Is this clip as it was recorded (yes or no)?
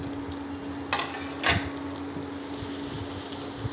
yes